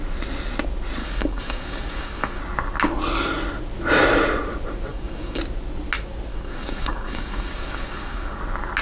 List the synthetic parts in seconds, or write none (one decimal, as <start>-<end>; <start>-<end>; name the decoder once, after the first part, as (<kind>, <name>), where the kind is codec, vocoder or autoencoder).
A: 1.0-2.4 (codec, DAC); 4.9-5.4; 6.3-8.4